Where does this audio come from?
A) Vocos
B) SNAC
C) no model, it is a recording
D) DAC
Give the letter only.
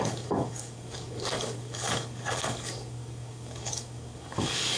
D